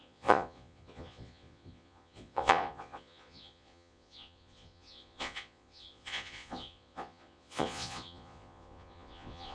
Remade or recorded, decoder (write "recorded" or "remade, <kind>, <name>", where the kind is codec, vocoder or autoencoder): remade, vocoder, Vocos